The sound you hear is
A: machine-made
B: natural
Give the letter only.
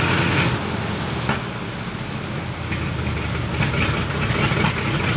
B